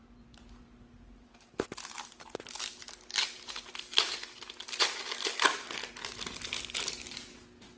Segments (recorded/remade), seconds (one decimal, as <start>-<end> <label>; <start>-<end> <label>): 0.0-7.8 recorded